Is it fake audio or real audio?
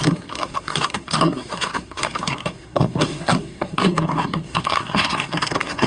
fake